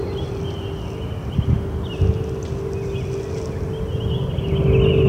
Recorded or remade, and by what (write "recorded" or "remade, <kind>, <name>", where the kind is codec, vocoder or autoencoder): recorded